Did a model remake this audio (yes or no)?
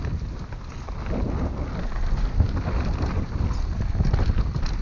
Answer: no